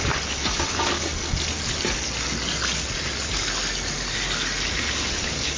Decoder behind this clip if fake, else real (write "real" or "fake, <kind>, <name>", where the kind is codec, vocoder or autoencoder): real